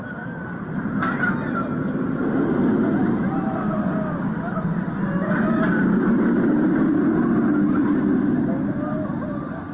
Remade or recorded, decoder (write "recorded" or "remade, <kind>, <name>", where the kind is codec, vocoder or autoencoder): recorded